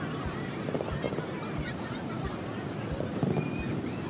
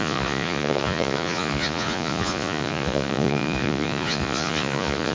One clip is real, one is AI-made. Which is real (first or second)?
first